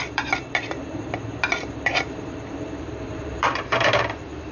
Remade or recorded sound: remade